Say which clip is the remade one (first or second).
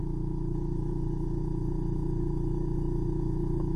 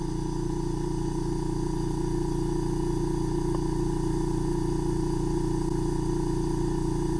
first